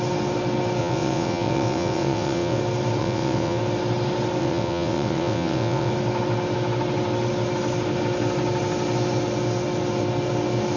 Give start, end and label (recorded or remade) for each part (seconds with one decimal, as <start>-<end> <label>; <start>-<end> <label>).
0.0-0.8 recorded; 0.8-2.6 remade; 2.6-3.0 recorded; 3.0-3.6 remade; 3.6-4.4 recorded; 4.4-5.9 remade; 5.9-10.8 recorded